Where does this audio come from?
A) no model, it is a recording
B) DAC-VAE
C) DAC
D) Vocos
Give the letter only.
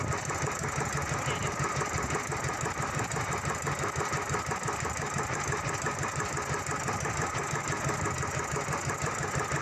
A